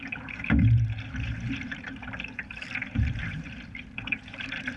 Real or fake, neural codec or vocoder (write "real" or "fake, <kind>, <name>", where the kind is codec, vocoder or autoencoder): fake, vocoder, BigVGAN v2